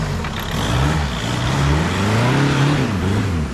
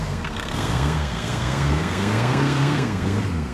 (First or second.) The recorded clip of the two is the first